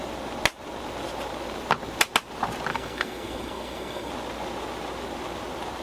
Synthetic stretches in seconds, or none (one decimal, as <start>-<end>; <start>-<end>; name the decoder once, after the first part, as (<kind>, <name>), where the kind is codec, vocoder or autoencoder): 2.7-4.1 (codec, SNAC)

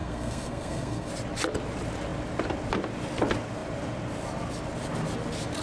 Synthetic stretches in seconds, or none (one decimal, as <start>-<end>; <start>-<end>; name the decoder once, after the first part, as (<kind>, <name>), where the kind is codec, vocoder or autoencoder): 0.0-1.1 (codec, SNAC)

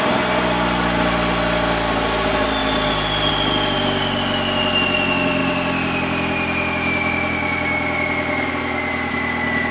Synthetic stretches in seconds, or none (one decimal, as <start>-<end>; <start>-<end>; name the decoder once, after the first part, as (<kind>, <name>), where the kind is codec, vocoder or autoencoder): none

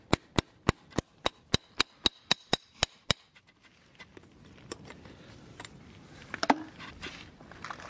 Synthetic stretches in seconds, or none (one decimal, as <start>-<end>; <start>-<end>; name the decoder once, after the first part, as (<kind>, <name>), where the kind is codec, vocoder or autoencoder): none

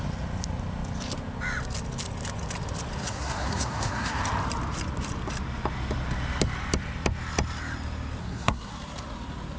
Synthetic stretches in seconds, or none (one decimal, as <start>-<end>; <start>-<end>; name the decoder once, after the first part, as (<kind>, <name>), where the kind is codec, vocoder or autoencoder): 3.0-4.2 (codec, SNAC); 8.2-8.7

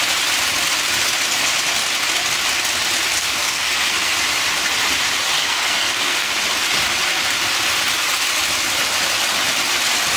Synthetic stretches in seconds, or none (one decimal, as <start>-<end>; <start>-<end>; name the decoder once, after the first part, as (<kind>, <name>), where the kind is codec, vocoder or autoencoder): 3.2-4.1 (codec, SNAC); 5.4-6.3